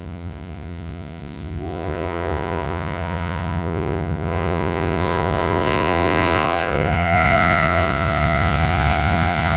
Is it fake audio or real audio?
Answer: fake